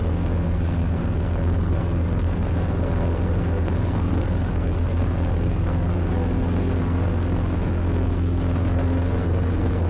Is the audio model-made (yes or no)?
yes